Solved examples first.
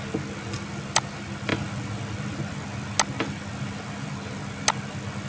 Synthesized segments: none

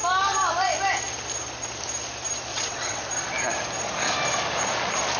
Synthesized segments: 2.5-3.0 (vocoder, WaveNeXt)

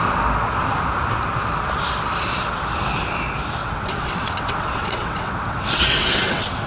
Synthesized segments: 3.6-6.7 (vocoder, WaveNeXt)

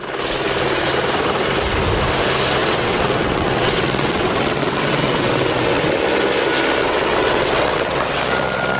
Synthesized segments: 2.6-6.0 (vocoder, WaveNeXt); 6.8-8.2